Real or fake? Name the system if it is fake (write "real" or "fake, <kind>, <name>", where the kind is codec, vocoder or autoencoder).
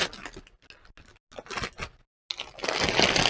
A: real